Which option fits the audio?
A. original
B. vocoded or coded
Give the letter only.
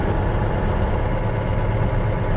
A